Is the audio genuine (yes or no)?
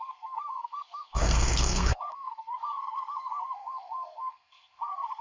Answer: no